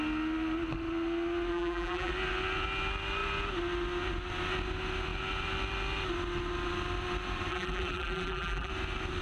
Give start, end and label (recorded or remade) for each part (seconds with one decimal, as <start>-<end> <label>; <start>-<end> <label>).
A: 0.0-1.5 recorded; 1.5-2.1 remade; 2.1-7.5 recorded; 7.5-8.7 remade; 8.7-9.2 recorded